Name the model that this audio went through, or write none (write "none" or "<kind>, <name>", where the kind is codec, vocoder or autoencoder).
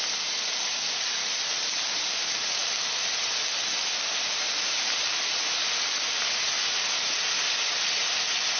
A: none